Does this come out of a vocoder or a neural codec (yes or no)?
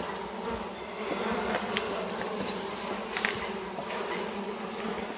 no